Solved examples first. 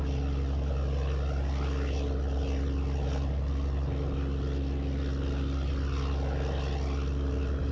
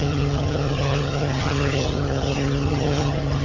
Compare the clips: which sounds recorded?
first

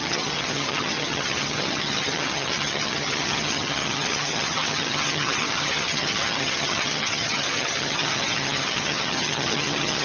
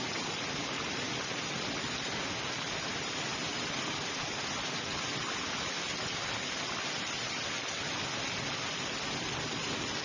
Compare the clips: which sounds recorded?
second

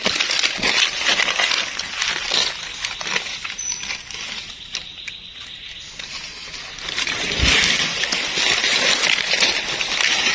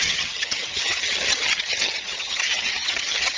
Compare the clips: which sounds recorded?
first